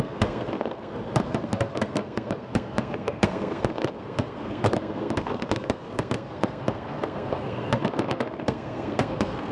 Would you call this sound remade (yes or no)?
yes